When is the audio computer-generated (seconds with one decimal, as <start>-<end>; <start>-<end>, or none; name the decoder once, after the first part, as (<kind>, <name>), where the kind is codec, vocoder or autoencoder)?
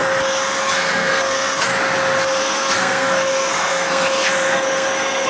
0.6-1.7 (codec, SNAC); 2.4-5.3